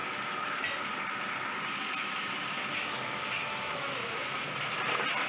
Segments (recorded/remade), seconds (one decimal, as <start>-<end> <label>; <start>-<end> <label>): 0.0-3.4 recorded; 3.4-4.5 remade; 4.5-5.3 recorded